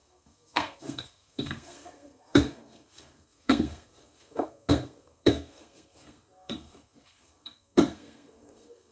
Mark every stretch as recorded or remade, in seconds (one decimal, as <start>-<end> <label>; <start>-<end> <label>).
0.0-8.9 remade